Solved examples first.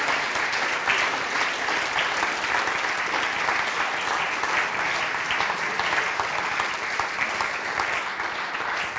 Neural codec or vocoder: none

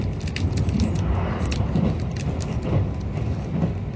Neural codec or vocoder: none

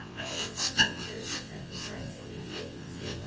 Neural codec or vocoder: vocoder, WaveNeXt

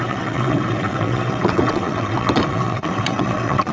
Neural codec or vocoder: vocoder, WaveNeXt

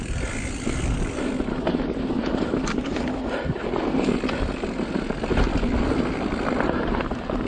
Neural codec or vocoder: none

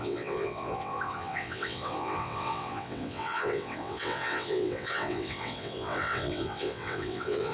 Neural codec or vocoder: vocoder, WaveNeXt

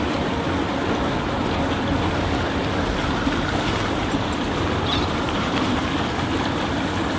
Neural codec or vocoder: none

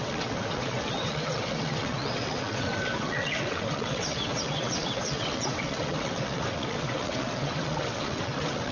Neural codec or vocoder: vocoder, WaveNeXt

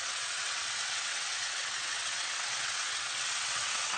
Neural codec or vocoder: vocoder, WaveNeXt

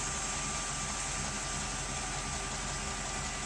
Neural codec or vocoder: none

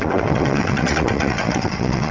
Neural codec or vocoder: vocoder, WaveNeXt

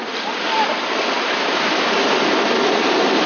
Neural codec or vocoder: none